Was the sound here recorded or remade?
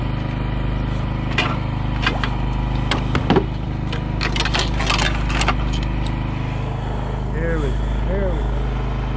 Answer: recorded